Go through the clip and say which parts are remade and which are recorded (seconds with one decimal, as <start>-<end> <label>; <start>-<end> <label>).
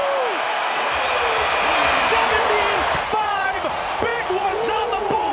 0.0-3.2 recorded; 3.2-5.3 remade